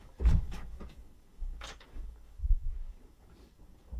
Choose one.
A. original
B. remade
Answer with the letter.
B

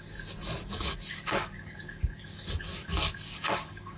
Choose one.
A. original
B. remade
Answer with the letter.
B